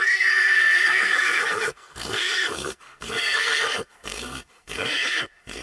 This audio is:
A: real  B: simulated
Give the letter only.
B